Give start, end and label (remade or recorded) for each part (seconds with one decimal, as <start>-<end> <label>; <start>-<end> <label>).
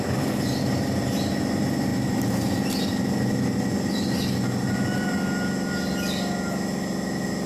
0.0-1.9 recorded; 1.9-2.5 remade; 2.5-7.5 recorded